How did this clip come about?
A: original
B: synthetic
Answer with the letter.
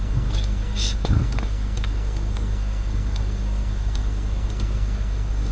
B